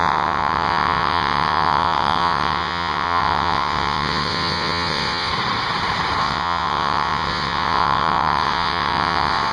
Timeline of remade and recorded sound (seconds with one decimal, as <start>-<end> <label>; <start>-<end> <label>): 0.0-5.3 remade; 5.3-6.2 recorded; 6.2-9.5 remade